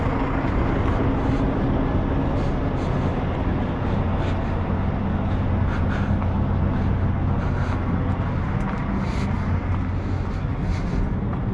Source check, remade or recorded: recorded